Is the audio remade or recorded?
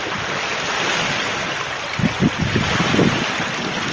recorded